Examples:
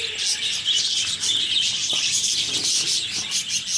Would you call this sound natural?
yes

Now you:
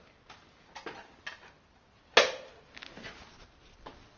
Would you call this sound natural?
yes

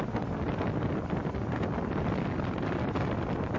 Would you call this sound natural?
yes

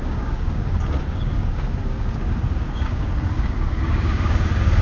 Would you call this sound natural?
no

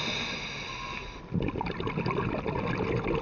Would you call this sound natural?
yes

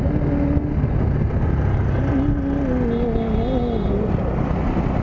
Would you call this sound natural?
yes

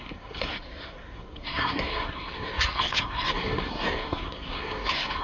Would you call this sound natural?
no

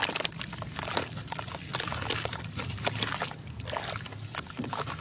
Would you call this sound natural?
yes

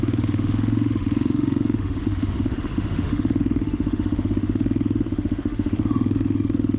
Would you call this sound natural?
no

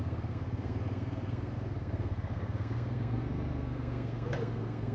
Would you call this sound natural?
no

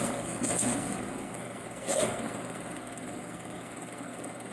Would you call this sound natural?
no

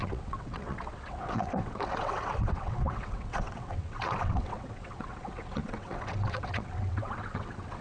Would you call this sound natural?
no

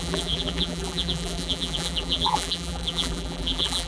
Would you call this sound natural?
no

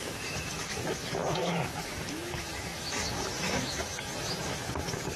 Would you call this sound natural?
no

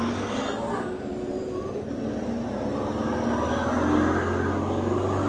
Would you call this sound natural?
yes